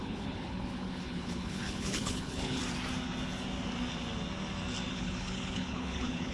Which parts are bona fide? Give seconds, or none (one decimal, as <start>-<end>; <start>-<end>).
2.6-4.9